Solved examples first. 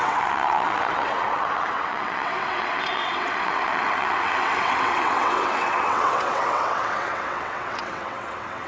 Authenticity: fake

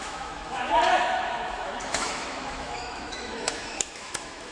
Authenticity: fake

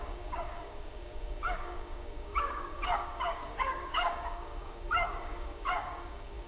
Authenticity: fake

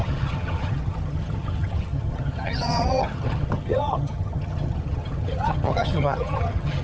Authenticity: fake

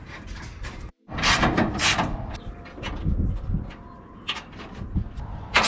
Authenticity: real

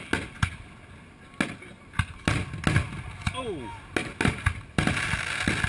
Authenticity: real